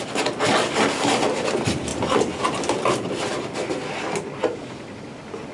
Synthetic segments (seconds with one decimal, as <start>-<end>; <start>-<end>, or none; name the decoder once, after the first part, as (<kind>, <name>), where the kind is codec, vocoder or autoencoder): none